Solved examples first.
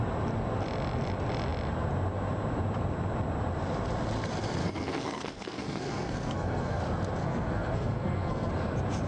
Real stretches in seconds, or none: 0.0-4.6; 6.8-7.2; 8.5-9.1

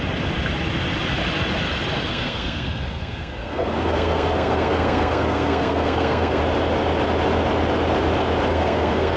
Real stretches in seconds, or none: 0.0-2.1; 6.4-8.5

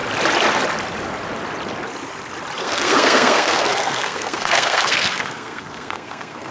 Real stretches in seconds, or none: 0.0-2.6

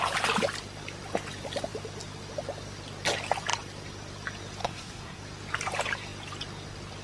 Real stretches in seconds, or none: 0.0-4.6; 5.2-7.0

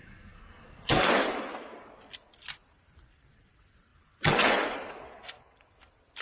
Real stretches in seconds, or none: 1.1-6.2

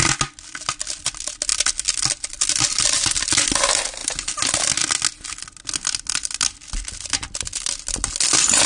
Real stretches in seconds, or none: 0.0-8.7

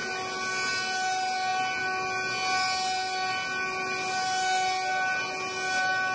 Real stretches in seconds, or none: 0.0-6.1

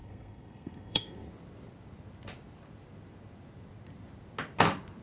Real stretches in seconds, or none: 1.3-5.0